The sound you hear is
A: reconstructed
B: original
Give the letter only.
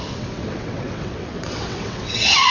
A